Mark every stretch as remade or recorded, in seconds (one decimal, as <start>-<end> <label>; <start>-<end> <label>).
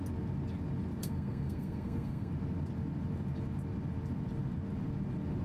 0.0-1.0 recorded; 1.0-2.3 remade; 2.3-5.4 recorded